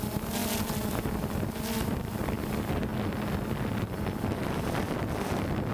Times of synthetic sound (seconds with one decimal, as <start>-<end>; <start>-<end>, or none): none